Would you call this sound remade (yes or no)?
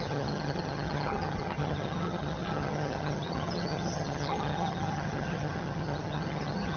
yes